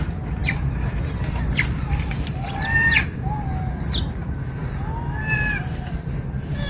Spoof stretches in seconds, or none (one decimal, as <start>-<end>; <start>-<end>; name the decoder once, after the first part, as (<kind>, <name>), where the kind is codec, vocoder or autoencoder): 0.4-3.0 (vocoder, BigVGAN v2)